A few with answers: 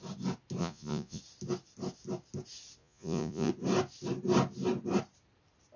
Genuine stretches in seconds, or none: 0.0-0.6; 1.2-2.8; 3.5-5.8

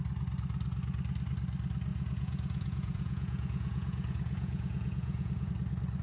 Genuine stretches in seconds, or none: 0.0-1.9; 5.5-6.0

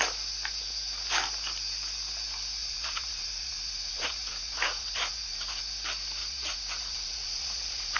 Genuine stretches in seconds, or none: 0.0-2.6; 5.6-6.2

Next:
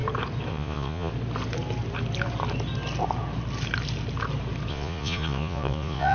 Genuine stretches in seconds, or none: 0.0-0.5; 1.1-4.7

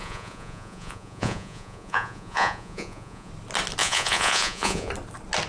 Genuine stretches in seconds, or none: 3.3-3.8; 4.9-5.5

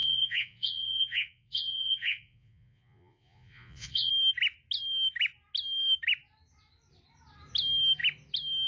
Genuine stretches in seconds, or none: 4.1-8.7